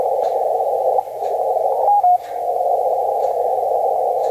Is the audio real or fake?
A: real